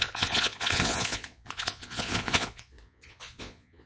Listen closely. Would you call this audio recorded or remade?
remade